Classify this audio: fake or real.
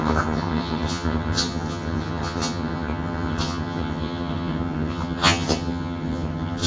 fake